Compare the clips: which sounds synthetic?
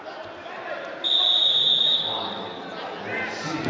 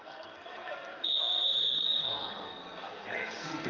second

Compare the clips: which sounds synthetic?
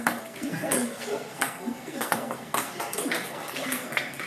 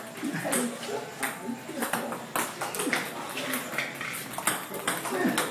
first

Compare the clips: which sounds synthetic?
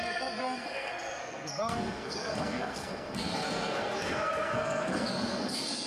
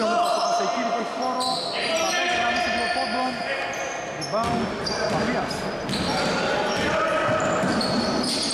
first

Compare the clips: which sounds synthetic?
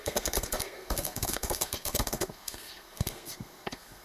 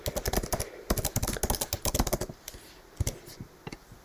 first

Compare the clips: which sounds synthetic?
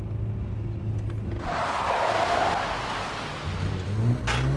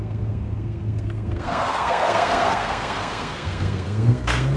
second